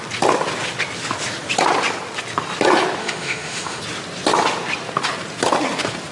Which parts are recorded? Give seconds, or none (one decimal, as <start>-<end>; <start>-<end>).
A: 0.0-3.0; 3.8-6.1